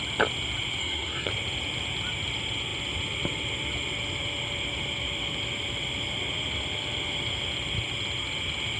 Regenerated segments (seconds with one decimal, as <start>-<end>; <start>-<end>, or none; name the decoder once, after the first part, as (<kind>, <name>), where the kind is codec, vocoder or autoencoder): 0.8-1.3 (codec, SNAC)